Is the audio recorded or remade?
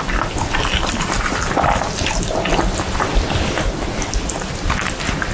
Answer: recorded